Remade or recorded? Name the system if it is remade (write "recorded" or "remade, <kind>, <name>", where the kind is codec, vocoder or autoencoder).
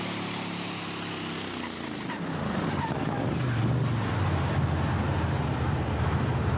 recorded